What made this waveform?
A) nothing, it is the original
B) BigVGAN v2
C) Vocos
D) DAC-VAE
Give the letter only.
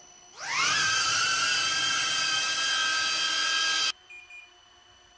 A